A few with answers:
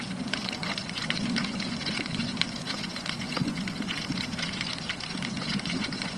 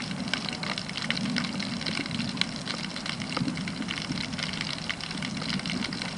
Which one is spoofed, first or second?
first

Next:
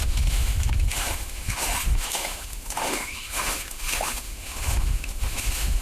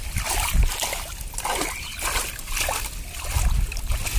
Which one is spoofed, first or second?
first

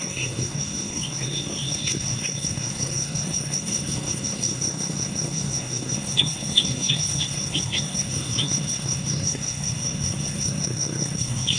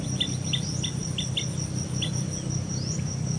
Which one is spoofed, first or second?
first